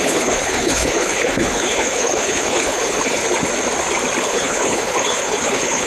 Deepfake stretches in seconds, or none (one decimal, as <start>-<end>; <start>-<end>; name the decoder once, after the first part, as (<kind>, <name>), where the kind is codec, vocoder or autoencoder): 0.0-3.2 (codec, HILCodec); 4.2-5.9